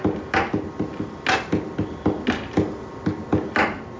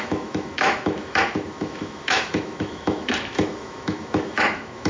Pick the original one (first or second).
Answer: first